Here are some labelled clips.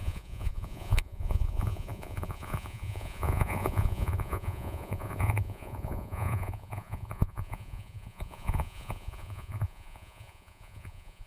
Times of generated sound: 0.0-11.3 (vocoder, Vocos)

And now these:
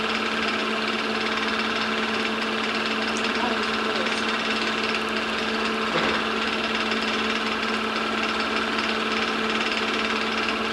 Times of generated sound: none

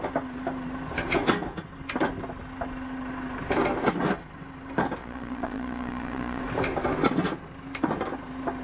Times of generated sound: 5.0-6.4 (vocoder, Vocos)

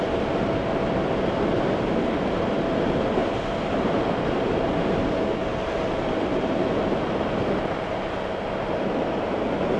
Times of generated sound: none

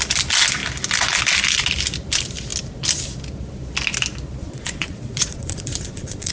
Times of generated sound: 4.4-6.3 (vocoder, Vocos)

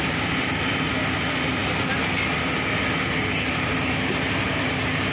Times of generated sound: none

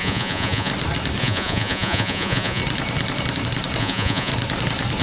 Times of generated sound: 0.0-0.7 (vocoder, Vocos); 1.2-2.6; 3.8-4.3